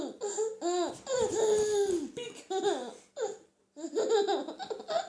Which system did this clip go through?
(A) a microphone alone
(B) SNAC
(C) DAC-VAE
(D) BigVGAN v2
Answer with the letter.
A